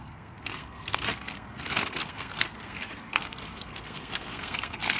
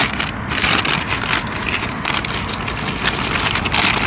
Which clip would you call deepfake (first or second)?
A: first